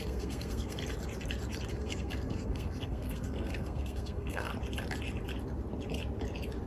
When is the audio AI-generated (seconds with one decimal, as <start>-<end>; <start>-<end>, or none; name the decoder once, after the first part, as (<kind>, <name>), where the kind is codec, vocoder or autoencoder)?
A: 0.0-0.8 (codec, SNAC); 1.7-4.5